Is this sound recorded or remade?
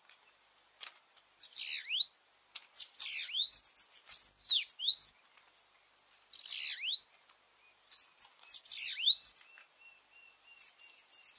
recorded